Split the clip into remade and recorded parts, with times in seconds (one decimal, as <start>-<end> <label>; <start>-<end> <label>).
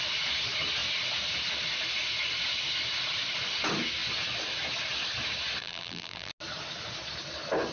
0.0-5.6 recorded; 5.6-6.3 remade; 6.3-7.7 recorded